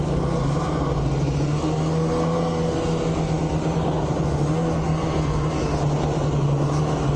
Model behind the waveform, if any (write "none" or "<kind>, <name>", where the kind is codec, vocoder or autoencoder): none